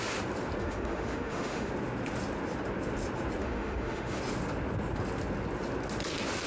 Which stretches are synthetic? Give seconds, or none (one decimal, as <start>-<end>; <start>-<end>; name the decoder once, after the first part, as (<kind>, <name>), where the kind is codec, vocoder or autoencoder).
0.6-1.7 (autoencoder, DAC-VAE); 3.4-4.2